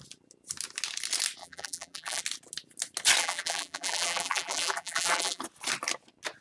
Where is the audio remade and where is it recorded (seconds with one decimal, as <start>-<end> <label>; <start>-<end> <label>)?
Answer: 0.0-1.4 recorded; 1.4-2.2 remade; 2.2-3.2 recorded; 3.2-5.4 remade; 5.4-6.4 recorded